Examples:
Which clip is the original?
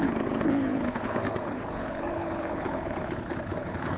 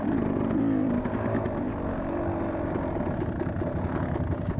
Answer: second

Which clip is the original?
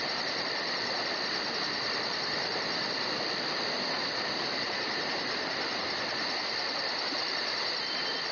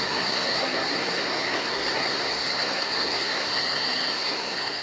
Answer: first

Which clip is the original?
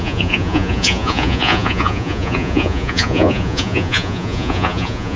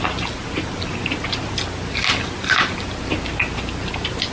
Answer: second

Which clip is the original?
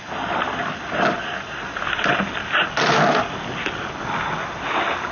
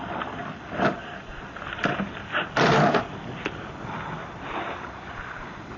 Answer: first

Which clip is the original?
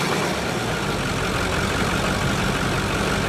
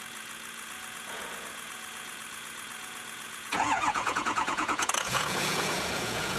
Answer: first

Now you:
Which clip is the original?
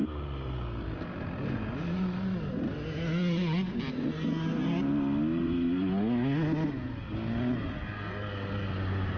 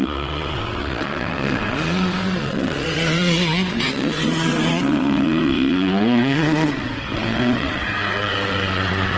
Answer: first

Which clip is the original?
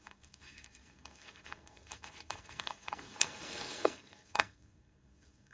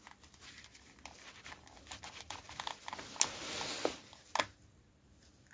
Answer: second